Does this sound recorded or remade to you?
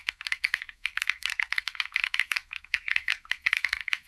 remade